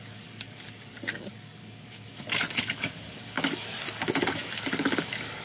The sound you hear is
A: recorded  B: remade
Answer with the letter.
B